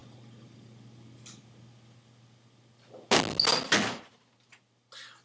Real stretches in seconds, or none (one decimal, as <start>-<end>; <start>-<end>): 0.0-5.2